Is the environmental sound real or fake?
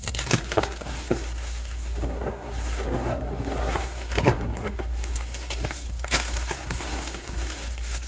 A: fake